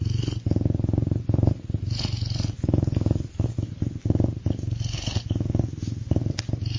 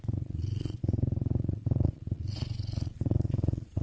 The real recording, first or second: first